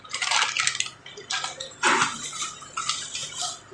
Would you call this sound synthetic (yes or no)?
no